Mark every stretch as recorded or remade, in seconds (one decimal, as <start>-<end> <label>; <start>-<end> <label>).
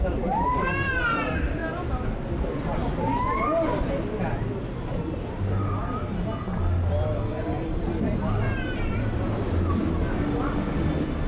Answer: 0.0-7.3 recorded; 7.3-8.9 remade; 8.9-11.3 recorded